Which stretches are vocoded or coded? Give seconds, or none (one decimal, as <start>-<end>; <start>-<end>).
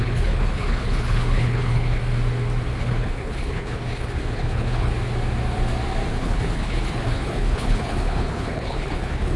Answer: 0.0-2.0; 2.8-4.9; 6.1-9.4